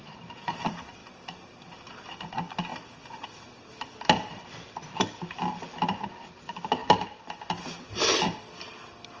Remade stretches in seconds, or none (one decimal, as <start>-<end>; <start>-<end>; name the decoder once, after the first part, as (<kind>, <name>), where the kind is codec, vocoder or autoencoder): 1.0-1.9 (vocoder, BigVGAN v2); 6.8-8.5